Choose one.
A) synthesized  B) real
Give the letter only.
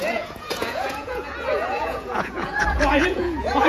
A